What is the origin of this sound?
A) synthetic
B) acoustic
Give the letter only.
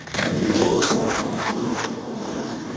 A